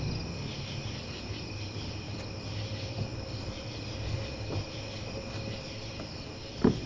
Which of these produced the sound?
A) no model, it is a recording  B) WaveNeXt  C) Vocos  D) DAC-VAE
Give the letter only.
A